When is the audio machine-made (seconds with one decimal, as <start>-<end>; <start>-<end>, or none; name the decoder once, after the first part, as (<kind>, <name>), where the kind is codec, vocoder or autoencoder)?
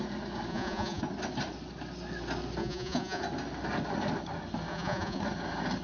0.5-1.0 (vocoder, Vocos); 2.6-3.2; 4.7-5.2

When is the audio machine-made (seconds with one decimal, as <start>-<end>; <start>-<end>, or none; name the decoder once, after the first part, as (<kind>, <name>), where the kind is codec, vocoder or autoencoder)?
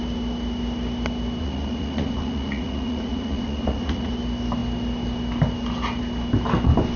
1.4-4.1 (vocoder, Vocos)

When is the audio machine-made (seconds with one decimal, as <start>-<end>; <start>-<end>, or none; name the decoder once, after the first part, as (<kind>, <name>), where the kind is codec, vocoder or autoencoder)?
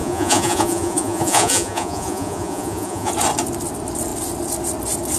0.0-3.1 (vocoder, Vocos)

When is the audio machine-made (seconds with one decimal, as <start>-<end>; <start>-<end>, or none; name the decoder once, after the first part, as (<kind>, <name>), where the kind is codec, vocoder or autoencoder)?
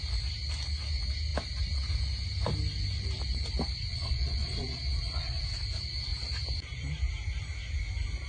3.9-5.4 (vocoder, Vocos)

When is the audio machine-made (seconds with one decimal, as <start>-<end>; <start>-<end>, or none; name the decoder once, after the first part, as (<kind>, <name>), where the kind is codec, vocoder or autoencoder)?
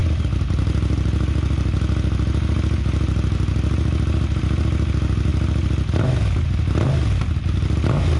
none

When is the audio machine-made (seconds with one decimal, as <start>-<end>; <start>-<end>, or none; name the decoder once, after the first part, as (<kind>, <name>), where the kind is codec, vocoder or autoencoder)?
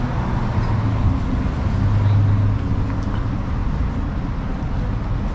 none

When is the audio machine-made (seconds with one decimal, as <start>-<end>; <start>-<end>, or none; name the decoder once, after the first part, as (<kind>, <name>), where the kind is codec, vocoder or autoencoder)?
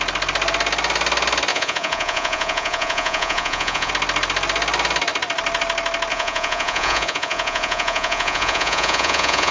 1.5-3.9 (vocoder, Vocos); 6.1-9.5